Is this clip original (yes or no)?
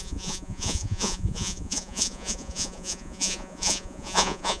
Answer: no